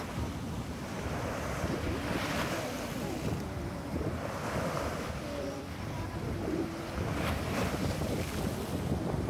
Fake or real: fake